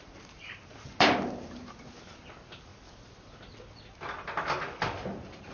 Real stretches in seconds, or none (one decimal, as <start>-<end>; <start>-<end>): 0.0-5.5